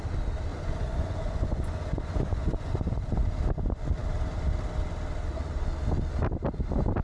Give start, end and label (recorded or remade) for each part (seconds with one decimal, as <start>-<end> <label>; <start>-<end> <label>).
0.0-0.5 recorded; 0.5-2.7 remade; 2.7-7.0 recorded